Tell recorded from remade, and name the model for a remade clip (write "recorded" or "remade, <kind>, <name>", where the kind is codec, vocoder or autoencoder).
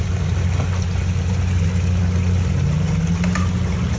recorded